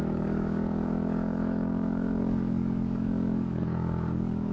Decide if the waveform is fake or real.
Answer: fake